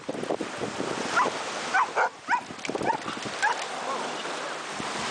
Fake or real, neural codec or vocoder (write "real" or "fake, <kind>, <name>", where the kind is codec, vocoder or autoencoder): real